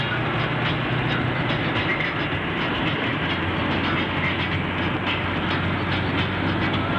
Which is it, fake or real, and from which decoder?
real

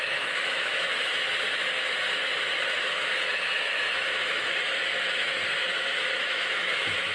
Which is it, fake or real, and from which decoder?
fake, autoencoder, DAC-VAE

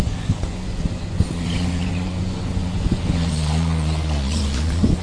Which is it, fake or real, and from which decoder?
fake, vocoder, Vocos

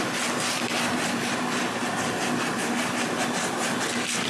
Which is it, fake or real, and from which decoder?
real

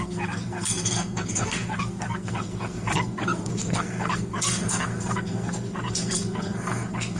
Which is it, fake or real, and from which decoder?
fake, codec, SNAC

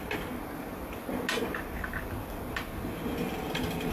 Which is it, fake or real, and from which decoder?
real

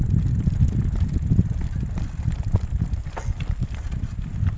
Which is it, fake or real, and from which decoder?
real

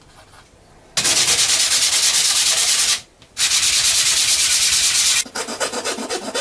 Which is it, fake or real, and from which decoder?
real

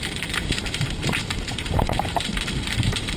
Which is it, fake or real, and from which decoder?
fake, vocoder, BigVGAN v2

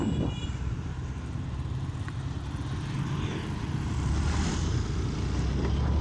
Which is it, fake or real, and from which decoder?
real